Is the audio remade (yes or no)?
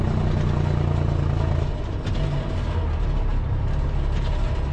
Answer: no